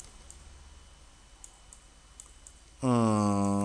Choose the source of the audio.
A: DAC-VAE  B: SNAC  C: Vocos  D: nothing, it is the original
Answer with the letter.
D